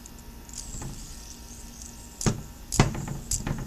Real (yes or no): yes